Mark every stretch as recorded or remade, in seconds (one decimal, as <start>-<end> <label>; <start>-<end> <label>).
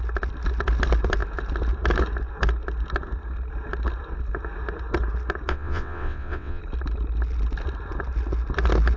0.0-5.5 recorded; 5.5-6.6 remade; 6.6-9.0 recorded